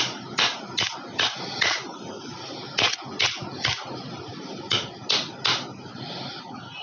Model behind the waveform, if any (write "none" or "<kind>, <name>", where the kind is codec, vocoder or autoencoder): none